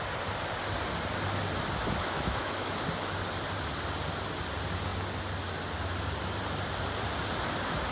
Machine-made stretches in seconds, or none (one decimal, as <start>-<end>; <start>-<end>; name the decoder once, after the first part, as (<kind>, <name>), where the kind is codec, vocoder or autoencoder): 2.0-2.8 (autoencoder, DAC-VAE)